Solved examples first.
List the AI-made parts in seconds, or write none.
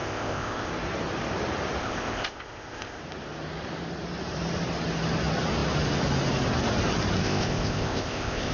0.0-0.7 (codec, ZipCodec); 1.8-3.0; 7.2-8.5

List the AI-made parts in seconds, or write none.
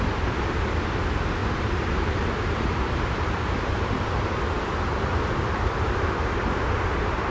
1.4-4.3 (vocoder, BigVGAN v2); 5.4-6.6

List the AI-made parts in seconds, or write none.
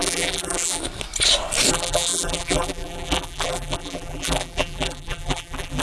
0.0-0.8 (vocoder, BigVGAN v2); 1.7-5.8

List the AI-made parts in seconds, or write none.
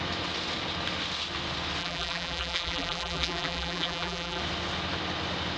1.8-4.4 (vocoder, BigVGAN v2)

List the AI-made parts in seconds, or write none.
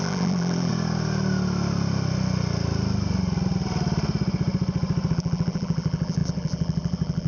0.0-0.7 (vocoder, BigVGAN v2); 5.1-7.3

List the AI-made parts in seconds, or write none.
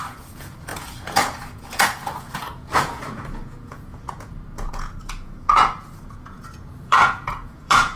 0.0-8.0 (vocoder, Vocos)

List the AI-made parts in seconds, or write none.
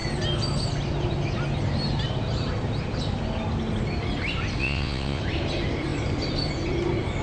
4.6-5.2 (vocoder, Vocos)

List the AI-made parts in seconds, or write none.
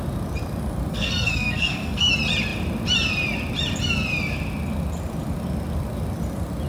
0.9-2.1 (codec, SNAC)